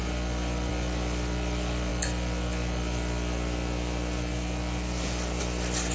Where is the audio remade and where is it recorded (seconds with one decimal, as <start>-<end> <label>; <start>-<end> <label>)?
0.0-5.9 recorded